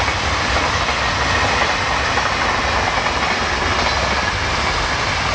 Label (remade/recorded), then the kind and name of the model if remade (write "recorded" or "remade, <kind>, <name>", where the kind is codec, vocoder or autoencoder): recorded